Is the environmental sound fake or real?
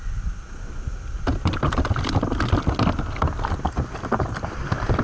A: real